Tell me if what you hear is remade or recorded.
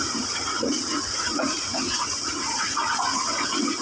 remade